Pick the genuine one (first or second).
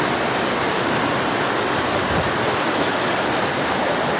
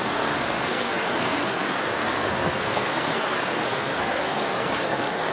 first